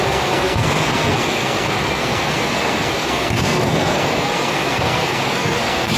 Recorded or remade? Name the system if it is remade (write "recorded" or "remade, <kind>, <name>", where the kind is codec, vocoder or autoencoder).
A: remade, codec, SNAC